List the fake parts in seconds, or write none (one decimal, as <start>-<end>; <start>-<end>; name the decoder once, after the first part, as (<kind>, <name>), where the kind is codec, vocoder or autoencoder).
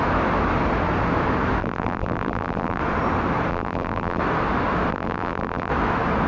1.6-2.8 (vocoder, BigVGAN v2); 3.5-4.2; 4.9-5.7